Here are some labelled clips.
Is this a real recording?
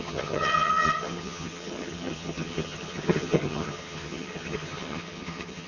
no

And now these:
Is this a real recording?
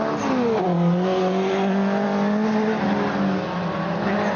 yes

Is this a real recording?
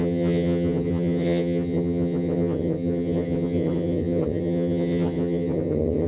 no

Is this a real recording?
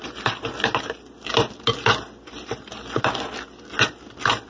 yes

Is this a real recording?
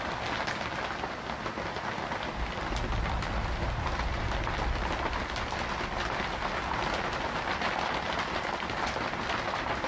yes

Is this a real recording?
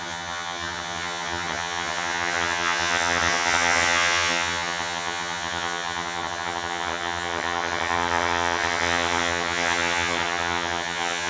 no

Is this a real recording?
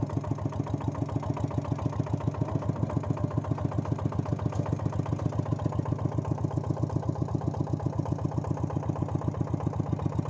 yes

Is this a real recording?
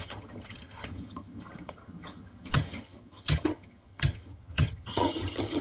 no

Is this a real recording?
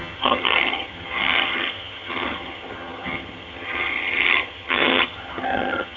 no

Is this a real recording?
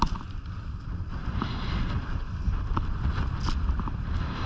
yes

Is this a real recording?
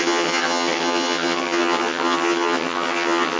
no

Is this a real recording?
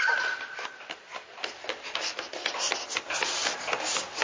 yes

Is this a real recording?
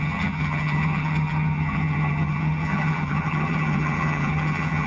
no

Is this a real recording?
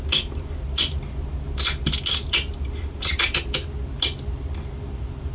yes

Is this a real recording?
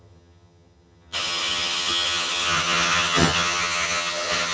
no